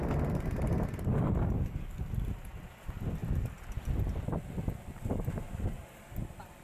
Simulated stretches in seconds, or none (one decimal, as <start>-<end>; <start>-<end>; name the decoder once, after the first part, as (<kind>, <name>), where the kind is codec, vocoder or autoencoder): 1.1-2.1 (codec, DAC)